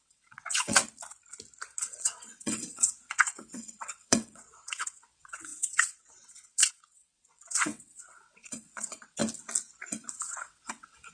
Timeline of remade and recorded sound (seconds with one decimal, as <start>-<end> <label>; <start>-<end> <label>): 0.0-0.8 remade; 0.8-1.8 recorded; 1.8-9.2 remade; 9.2-10.1 recorded; 10.1-11.1 remade